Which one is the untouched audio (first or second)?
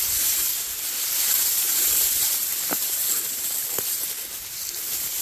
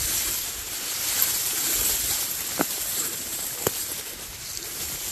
second